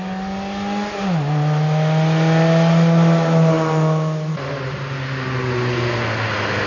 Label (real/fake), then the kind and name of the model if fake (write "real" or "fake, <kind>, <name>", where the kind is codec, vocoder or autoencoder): real